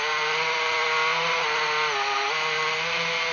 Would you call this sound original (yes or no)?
yes